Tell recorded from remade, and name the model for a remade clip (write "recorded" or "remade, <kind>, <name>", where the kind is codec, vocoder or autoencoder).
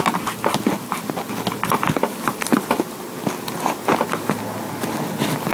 recorded